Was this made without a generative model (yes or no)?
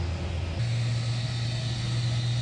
yes